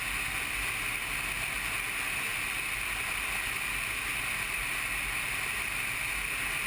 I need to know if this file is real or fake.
real